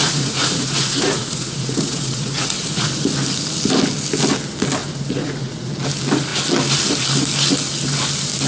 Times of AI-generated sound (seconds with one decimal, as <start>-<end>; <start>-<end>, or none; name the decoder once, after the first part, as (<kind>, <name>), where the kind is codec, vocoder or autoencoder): 0.0-2.9 (vocoder, Vocos); 4.8-5.7